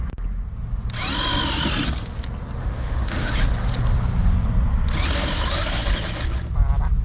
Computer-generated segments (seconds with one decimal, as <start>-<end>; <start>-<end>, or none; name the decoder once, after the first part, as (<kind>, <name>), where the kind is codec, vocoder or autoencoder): 2.6-3.3 (autoencoder, DAC-VAE)